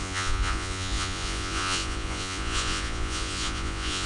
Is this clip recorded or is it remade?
remade